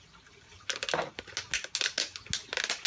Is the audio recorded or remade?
recorded